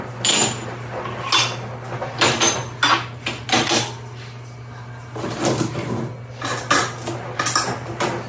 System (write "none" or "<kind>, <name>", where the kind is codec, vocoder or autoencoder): none